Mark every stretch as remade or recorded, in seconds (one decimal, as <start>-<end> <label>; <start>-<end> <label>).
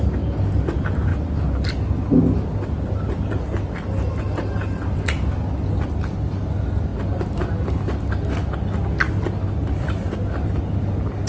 0.0-8.4 remade; 8.4-9.7 recorded; 9.7-11.3 remade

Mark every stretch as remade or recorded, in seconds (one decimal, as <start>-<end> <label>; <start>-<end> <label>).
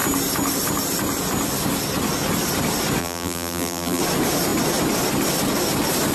0.0-3.0 recorded; 3.0-4.0 remade; 4.0-6.1 recorded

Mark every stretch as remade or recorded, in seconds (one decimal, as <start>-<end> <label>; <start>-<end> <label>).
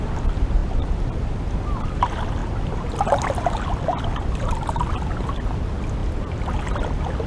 0.0-0.6 recorded; 0.6-1.5 remade; 1.5-2.4 recorded; 2.4-4.5 remade; 4.5-7.3 recorded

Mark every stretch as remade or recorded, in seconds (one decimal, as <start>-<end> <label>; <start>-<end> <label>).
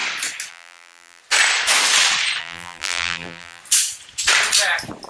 0.0-0.5 recorded; 0.5-1.2 remade; 1.2-2.4 recorded; 2.4-3.6 remade; 3.6-5.1 recorded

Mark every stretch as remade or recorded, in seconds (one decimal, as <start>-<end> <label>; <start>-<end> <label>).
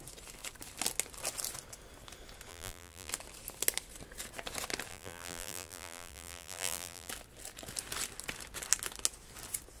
0.0-2.5 recorded; 2.5-3.1 remade; 3.1-4.9 recorded; 4.9-7.1 remade; 7.1-9.8 recorded